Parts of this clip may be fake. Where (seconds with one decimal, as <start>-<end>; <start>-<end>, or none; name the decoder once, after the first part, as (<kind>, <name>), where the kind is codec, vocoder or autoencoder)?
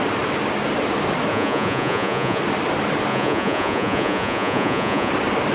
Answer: 1.3-2.4 (vocoder, Vocos); 3.1-5.1